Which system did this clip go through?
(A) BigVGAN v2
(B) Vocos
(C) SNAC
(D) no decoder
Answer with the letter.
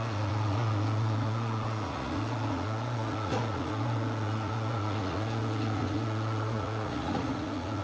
B